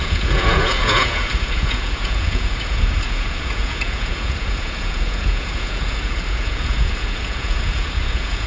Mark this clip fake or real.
fake